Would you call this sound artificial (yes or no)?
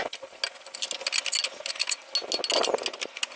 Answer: no